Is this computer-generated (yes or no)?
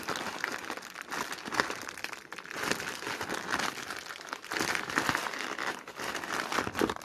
no